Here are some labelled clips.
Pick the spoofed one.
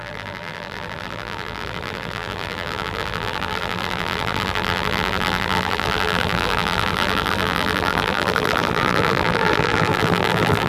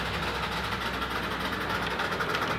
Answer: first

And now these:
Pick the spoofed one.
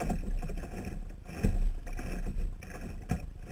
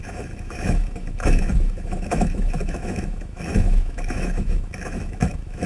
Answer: second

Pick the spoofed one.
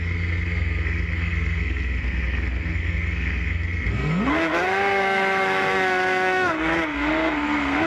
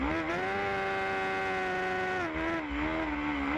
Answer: first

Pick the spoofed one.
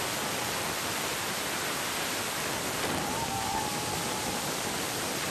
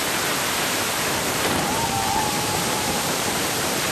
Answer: second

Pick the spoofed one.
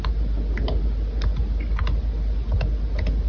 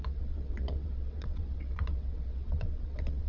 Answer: second